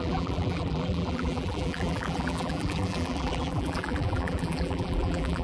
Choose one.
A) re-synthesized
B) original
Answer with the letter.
A